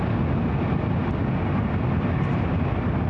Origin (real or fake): real